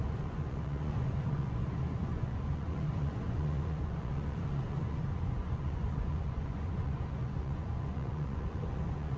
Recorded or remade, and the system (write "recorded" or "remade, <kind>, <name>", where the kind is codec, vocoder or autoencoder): remade, vocoder, Vocos